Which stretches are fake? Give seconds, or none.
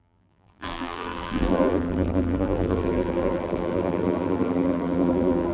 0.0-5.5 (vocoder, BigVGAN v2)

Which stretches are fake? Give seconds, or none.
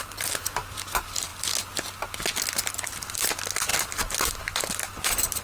none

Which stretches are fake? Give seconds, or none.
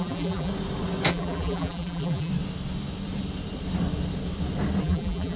0.0-0.5 (vocoder, BigVGAN v2); 1.1-2.3; 4.8-5.4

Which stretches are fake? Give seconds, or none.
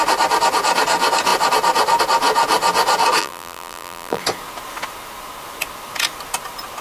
3.2-4.2 (vocoder, BigVGAN v2)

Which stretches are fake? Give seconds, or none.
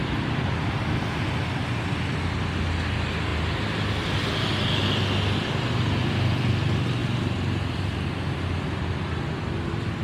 0.0-0.6 (vocoder, BigVGAN v2)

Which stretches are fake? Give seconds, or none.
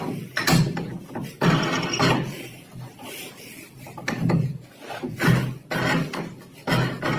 1.0-5.3 (vocoder, BigVGAN v2)